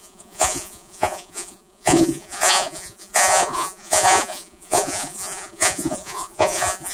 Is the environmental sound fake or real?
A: fake